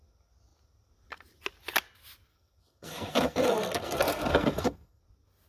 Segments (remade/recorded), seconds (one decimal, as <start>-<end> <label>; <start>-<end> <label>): 0.0-2.3 recorded; 2.3-5.0 remade; 5.0-5.5 recorded